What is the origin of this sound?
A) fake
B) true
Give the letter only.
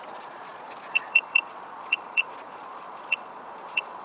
A